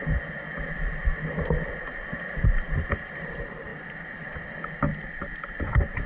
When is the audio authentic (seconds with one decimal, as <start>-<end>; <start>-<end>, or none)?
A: 0.0-3.7; 4.5-6.1